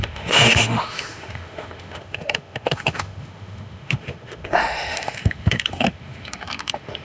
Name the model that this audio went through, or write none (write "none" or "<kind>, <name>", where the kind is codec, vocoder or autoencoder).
autoencoder, DAC-VAE